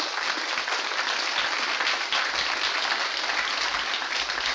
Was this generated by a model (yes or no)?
no